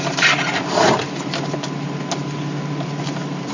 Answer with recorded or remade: recorded